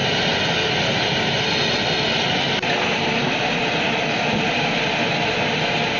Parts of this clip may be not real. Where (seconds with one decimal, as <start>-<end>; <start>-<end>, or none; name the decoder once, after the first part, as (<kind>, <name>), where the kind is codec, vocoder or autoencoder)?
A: none